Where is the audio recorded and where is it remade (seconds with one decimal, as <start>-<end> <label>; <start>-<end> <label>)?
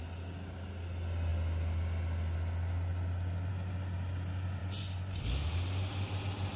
0.0-4.6 recorded; 4.6-5.2 remade; 5.2-6.6 recorded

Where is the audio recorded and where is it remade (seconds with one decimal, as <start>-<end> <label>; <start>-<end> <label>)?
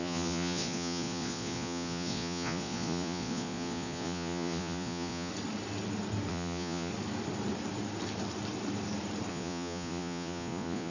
0.0-5.3 remade; 5.3-6.3 recorded; 6.3-6.9 remade; 6.9-9.3 recorded; 9.3-10.9 remade